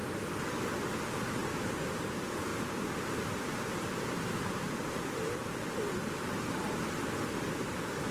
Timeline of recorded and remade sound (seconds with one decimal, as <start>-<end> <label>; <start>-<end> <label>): 0.0-1.4 recorded; 1.4-2.0 remade; 2.0-2.5 recorded; 2.5-7.1 remade; 7.1-8.1 recorded